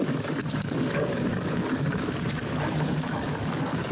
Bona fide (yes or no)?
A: no